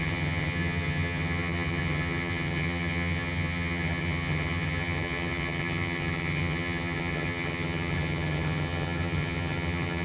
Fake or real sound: fake